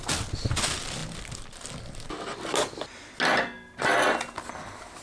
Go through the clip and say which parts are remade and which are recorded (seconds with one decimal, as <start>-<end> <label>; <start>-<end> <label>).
0.0-5.0 recorded